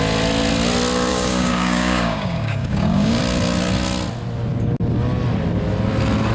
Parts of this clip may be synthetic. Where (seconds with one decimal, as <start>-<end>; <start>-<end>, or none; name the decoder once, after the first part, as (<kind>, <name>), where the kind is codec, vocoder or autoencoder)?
1.1-3.2 (codec, DAC)